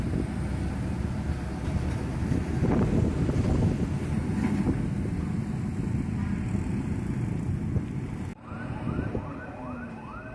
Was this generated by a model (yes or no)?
no